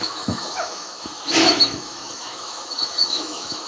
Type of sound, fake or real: fake